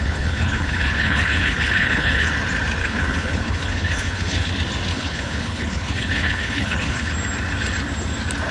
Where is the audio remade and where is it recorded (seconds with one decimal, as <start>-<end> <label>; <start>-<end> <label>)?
0.0-2.3 remade; 2.3-2.8 recorded; 2.8-4.5 remade; 4.5-4.9 recorded; 4.9-7.1 remade; 7.1-8.5 recorded